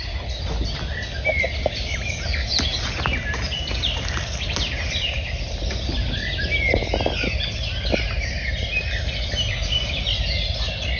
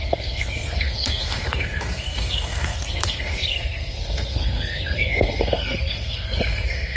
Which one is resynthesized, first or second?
second